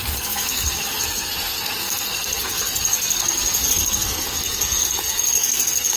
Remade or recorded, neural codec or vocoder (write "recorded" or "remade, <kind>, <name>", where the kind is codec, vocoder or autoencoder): remade, codec, SNAC